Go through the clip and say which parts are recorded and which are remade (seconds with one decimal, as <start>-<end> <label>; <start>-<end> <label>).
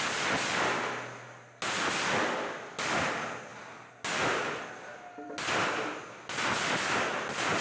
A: 0.0-7.6 recorded